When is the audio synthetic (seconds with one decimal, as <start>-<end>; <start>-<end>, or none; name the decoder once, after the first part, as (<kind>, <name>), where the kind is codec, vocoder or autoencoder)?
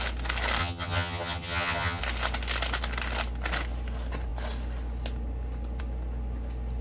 0.6-2.0 (vocoder, HiFi-GAN)